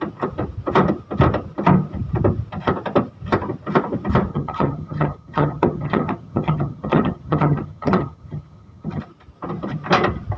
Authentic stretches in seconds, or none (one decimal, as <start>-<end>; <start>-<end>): 0.0-4.3; 9.0-10.4